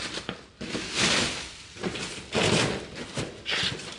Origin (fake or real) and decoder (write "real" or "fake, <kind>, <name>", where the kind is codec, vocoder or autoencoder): real